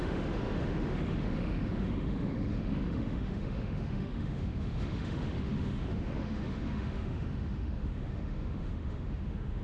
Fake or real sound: fake